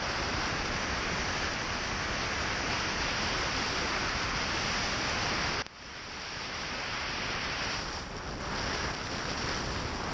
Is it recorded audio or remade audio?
recorded